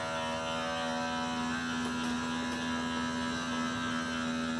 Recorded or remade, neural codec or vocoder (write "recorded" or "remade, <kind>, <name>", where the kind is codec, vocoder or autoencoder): recorded